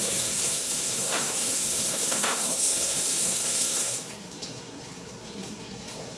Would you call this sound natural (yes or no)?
no